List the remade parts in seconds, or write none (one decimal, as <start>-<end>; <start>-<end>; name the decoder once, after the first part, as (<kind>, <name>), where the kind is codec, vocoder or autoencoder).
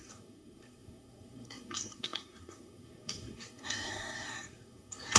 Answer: 0.0-5.2 (codec, SNAC)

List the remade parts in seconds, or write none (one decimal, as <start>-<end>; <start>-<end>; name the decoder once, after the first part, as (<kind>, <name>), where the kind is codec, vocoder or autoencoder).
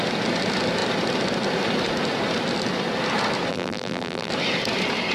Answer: 3.5-4.3 (vocoder, BigVGAN v2)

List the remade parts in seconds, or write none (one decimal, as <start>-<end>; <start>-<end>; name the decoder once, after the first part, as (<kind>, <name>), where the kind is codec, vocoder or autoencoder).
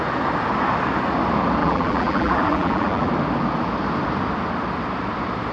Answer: 1.6-3.1 (vocoder, BigVGAN v2)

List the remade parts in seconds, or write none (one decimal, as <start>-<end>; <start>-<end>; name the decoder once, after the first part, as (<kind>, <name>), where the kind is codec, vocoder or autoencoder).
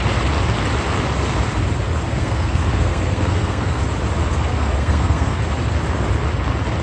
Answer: 2.1-3.8 (codec, SNAC); 4.3-5.4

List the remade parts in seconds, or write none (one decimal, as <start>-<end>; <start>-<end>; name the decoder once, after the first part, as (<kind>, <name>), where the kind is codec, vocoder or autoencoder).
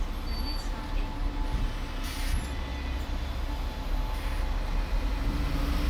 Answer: none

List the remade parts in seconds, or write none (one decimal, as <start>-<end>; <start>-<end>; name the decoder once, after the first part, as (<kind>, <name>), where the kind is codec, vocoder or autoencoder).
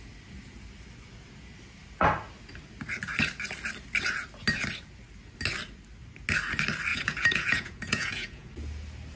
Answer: 6.9-8.5 (vocoder, Vocos)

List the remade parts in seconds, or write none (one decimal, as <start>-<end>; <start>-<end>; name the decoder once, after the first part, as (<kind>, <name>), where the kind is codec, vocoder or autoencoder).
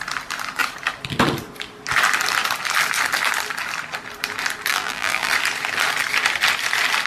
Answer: 4.7-5.3 (vocoder, BigVGAN v2)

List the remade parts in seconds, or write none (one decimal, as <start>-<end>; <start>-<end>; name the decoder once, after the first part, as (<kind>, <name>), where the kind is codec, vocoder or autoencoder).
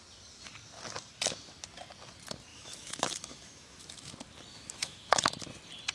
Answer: 2.5-4.1 (autoencoder, DAC-VAE); 4.5-5.1